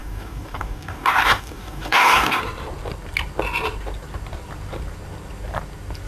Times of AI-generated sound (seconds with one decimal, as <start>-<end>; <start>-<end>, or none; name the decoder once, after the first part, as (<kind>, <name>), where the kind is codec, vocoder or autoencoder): 0.0-2.4 (codec, DAC)